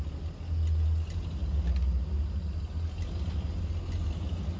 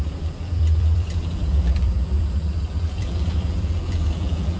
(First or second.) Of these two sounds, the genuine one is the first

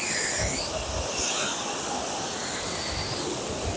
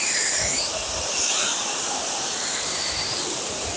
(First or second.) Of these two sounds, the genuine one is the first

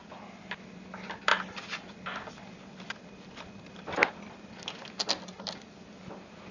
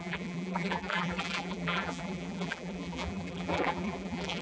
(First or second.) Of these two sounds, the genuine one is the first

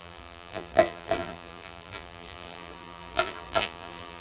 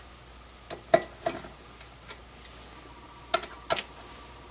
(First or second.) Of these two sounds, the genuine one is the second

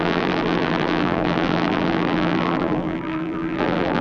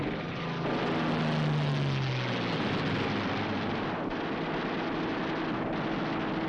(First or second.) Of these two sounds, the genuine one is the second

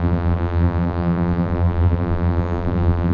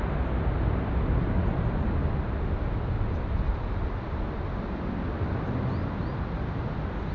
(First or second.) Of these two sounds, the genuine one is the second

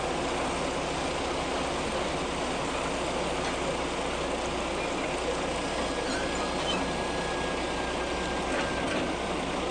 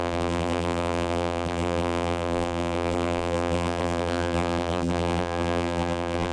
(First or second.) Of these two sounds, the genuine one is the first